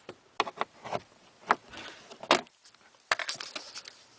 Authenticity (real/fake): real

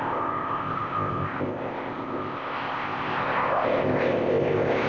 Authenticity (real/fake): fake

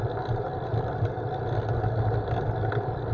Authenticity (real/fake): real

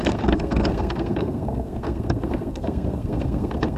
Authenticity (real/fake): fake